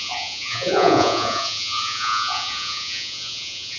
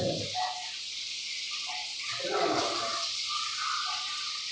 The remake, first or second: first